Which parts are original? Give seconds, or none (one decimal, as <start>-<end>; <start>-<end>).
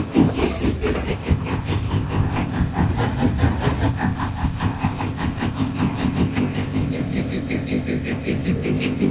0.4-1.1; 2.9-3.9